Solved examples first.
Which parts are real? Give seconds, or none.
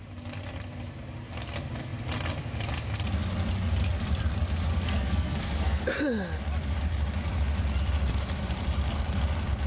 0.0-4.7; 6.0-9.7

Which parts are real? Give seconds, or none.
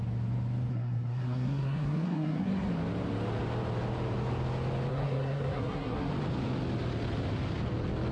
0.0-0.7; 2.7-4.9; 6.1-8.1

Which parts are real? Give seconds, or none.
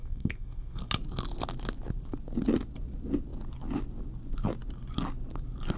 0.8-5.8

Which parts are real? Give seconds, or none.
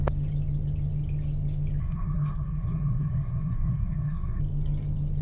0.0-1.8; 4.4-5.2